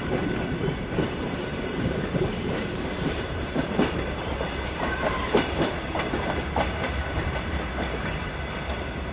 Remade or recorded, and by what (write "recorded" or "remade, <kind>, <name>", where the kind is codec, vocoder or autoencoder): remade, vocoder, BigVGAN v2